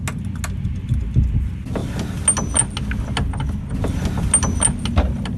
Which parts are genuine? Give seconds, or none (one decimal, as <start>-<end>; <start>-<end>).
0.0-5.4